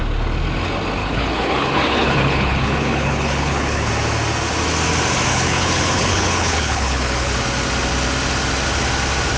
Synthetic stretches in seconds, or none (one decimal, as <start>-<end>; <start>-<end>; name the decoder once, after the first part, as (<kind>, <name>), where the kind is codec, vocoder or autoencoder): 1.0-3.9 (codec, HILCodec); 5.3-7.3